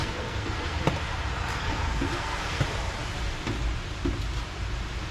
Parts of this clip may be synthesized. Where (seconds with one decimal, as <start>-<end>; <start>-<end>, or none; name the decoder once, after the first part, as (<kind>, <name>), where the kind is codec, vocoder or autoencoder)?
0.0-0.8 (codec, SNAC); 1.5-2.6